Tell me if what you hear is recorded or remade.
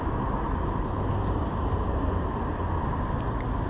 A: recorded